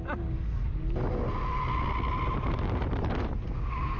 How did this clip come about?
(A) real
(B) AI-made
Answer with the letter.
A